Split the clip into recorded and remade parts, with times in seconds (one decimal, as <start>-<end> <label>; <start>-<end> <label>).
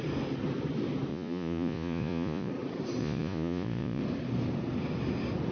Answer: 0.0-1.1 recorded; 1.1-2.5 remade; 2.5-3.0 recorded; 3.0-4.0 remade; 4.0-5.5 recorded